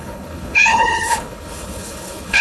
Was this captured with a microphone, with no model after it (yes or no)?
no